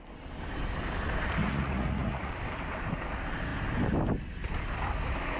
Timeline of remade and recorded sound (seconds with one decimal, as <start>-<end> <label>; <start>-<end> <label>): 0.0-1.4 recorded; 1.4-2.3 remade; 2.3-5.4 recorded